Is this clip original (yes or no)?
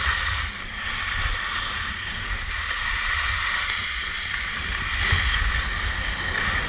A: yes